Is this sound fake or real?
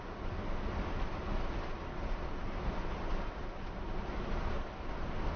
real